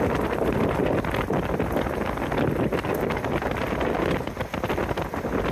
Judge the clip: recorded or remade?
recorded